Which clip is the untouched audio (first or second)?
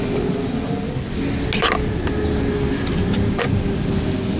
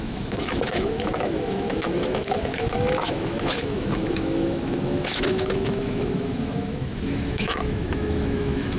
first